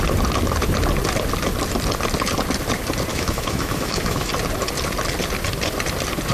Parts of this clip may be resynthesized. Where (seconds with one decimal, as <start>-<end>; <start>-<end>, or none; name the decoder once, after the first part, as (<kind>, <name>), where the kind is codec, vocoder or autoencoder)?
3.1-4.3 (autoencoder, DAC-VAE)